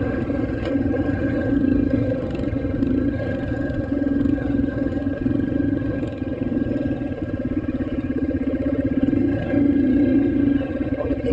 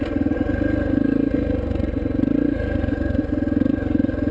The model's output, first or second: first